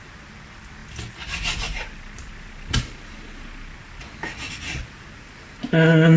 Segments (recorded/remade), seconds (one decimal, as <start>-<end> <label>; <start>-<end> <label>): 0.0-6.2 recorded